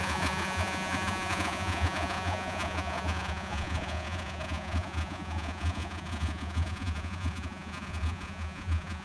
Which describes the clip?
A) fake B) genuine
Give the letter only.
A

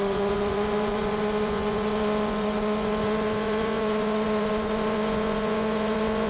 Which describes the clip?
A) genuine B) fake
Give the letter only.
B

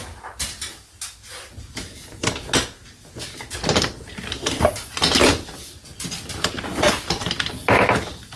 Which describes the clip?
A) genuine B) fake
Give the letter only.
A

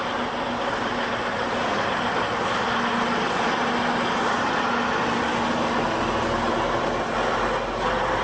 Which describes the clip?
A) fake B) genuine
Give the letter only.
B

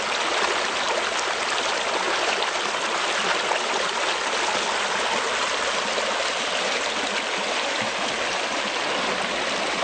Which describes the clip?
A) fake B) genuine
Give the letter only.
B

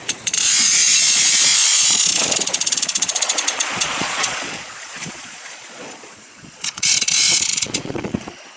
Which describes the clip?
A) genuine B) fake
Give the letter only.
B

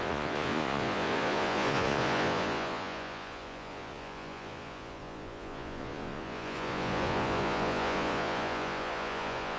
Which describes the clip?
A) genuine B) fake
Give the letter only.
B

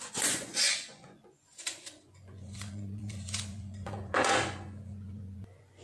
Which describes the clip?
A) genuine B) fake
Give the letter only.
B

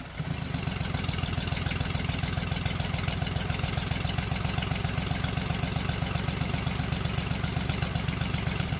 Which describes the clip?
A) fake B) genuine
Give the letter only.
B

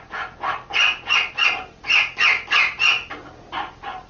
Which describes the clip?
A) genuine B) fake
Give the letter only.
A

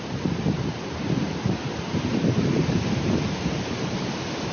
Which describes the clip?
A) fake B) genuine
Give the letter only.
B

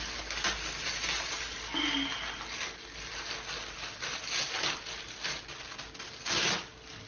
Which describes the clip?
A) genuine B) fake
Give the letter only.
A